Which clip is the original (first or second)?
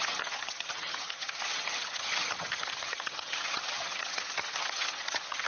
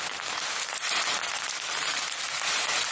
second